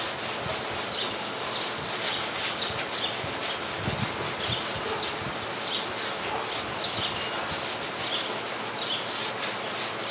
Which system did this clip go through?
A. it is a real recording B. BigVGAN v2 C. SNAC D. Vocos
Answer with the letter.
A